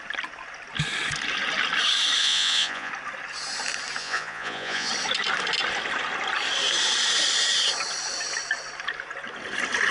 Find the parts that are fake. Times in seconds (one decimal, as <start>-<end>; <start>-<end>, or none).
2.2-2.9; 4.0-4.9